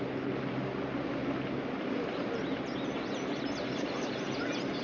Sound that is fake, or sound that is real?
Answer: real